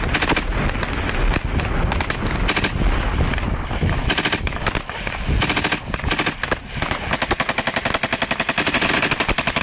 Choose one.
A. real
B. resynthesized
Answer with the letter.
A